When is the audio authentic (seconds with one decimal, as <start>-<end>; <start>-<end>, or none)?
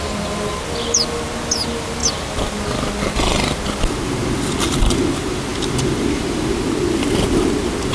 0.0-5.5; 6.5-7.9